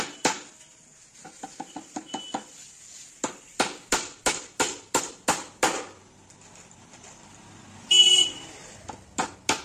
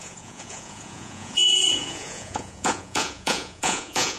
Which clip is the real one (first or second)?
first